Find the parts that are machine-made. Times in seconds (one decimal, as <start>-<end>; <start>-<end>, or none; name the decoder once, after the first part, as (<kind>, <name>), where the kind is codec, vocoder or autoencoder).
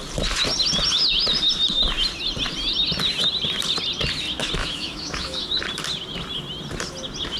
4.6-5.6 (autoencoder, DAC-VAE)